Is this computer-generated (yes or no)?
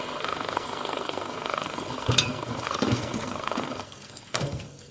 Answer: yes